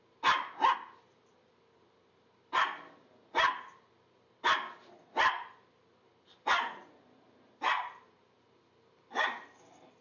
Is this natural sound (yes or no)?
yes